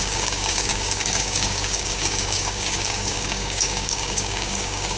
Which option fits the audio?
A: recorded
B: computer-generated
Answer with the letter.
B